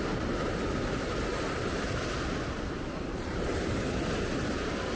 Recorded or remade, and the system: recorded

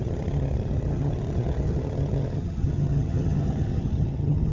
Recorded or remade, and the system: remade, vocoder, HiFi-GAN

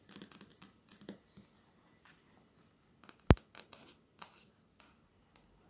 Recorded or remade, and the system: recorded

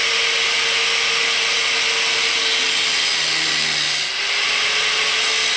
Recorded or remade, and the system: recorded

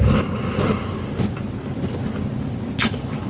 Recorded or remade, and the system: recorded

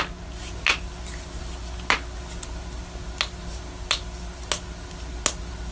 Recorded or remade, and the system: recorded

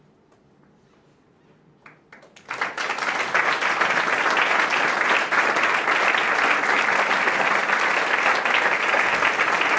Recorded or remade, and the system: recorded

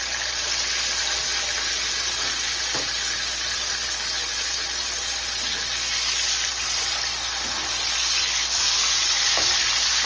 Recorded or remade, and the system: recorded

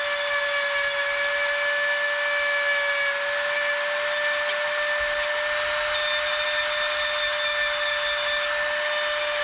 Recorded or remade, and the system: recorded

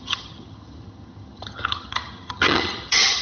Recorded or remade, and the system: remade, vocoder, HiFi-GAN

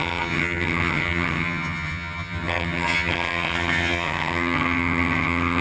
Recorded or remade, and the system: remade, vocoder, HiFi-GAN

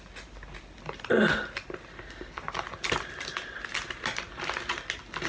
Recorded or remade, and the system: recorded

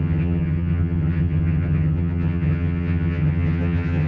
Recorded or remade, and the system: remade, vocoder, HiFi-GAN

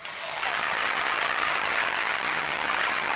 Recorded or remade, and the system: remade, vocoder, HiFi-GAN